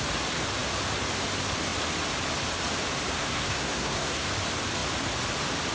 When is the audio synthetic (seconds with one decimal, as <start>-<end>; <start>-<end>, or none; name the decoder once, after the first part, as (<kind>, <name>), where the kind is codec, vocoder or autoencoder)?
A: 3.2-4.3 (codec, SNAC)

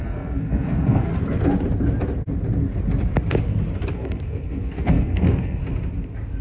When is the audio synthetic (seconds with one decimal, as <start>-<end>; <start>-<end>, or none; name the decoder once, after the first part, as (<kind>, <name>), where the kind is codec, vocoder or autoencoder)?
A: 0.0-1.1 (codec, SNAC); 3.9-5.6

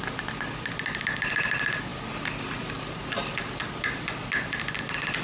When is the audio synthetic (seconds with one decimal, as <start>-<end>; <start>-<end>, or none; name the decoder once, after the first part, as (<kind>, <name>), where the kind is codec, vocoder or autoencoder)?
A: none

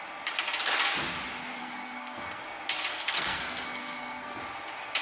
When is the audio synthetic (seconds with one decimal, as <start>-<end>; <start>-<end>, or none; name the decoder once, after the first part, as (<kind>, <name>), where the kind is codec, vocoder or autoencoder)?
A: 1.6-2.4 (codec, SNAC); 2.9-4.4

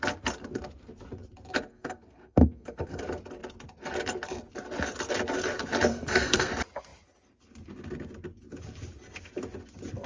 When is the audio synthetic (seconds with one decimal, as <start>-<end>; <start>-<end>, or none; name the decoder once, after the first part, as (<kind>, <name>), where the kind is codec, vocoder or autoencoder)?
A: 1.7-3.0 (codec, SNAC); 5.9-6.5

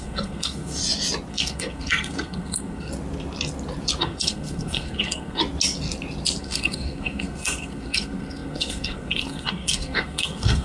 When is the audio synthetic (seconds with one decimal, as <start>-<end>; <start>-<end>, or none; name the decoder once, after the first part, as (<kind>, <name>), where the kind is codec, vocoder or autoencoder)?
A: 0.0-0.8 (codec, SNAC); 1.3-2.9; 4.0-5.4; 6.4-10.6

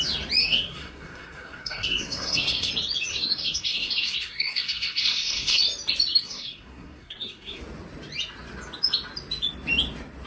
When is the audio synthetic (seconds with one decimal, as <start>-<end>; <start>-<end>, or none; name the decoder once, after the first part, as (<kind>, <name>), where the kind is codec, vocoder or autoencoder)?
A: 0.4-2.7 (codec, SNAC); 3.1-5.6; 6.2-7.6

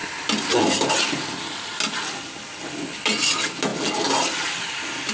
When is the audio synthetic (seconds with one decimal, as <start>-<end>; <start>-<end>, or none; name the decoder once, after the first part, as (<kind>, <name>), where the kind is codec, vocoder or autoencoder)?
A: none